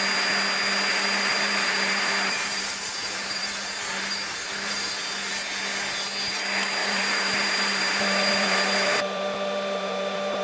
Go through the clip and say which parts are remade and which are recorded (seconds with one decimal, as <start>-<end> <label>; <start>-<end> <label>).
0.0-0.9 recorded; 0.9-4.9 remade; 4.9-6.8 recorded; 6.8-10.4 remade